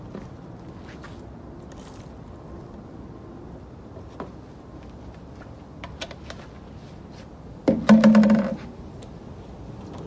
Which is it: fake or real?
real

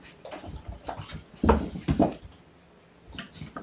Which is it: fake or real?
real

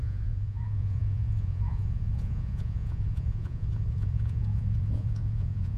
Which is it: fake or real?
fake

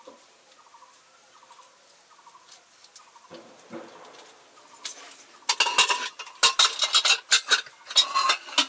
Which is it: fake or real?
real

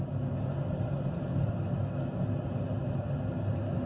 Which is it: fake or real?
real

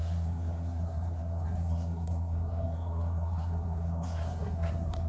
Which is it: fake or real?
fake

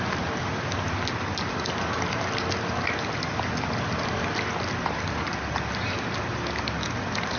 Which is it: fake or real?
real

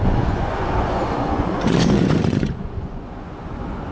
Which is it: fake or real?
fake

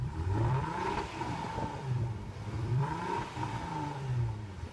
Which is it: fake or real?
fake